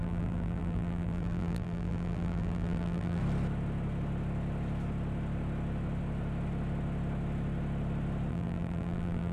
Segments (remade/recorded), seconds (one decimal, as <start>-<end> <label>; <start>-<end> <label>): 0.0-3.2 remade; 3.2-8.3 recorded; 8.3-9.3 remade